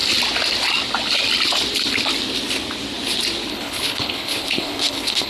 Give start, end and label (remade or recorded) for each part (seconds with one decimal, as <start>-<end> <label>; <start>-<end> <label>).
0.0-3.5 recorded; 3.5-5.3 remade